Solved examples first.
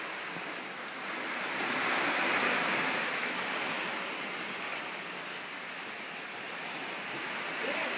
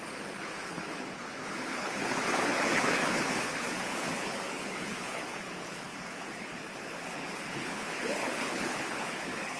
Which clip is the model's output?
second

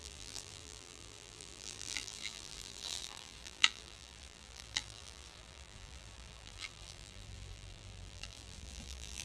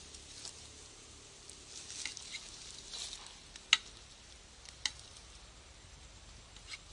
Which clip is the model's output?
first